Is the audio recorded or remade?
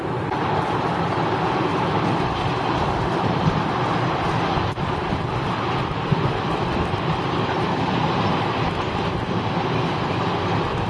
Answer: remade